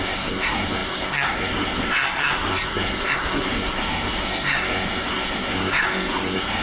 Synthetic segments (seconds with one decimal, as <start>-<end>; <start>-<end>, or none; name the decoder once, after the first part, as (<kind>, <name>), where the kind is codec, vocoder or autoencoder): 0.0-6.6 (codec, SNAC)